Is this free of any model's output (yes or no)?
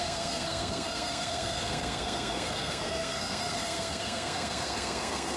no